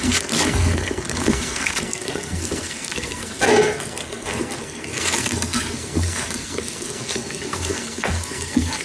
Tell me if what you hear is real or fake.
fake